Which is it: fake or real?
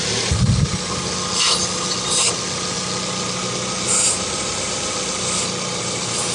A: real